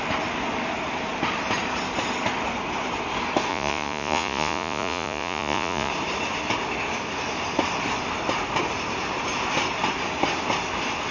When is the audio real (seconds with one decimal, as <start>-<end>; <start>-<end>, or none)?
0.0-3.5; 5.9-11.1